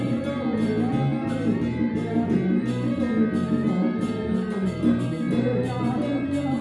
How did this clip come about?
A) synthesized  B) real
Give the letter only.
B